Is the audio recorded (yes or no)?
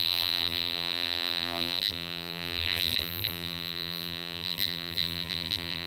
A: no